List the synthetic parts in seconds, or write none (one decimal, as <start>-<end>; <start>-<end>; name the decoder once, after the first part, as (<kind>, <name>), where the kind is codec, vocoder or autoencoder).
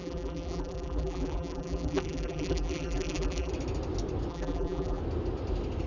0.0-3.5 (vocoder, BigVGAN v2); 4.3-5.0